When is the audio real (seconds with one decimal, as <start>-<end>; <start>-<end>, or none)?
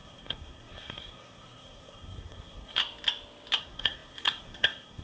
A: 2.8-3.6